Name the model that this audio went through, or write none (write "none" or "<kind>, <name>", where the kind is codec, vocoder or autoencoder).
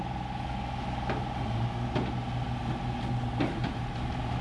none